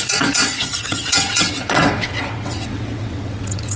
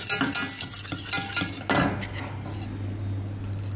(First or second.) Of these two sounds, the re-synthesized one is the first